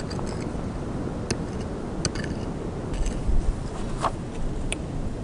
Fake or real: real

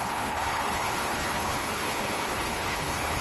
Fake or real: fake